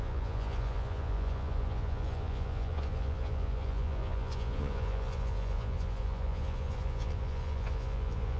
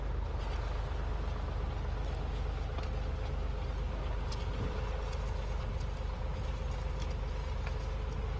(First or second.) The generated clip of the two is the first